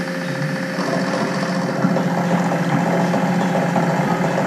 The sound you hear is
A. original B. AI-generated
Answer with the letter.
A